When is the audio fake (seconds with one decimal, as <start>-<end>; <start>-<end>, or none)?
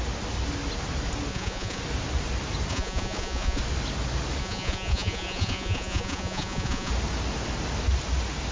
1.3-1.8; 2.7-3.6; 4.4-6.9